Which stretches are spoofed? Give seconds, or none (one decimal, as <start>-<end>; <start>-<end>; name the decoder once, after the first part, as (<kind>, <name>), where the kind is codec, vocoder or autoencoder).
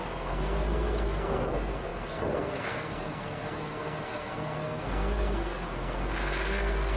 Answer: 0.0-7.0 (codec, SNAC)